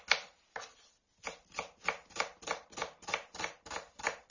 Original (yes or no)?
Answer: yes